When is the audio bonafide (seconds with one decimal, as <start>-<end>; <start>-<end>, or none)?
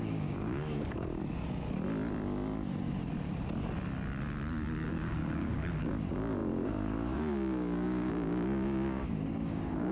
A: 1.2-4.9